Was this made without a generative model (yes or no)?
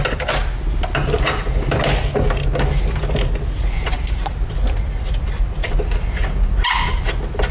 yes